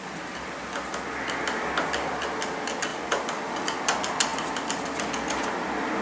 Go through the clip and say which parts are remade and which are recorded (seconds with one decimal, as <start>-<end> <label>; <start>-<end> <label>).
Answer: 0.0-6.0 recorded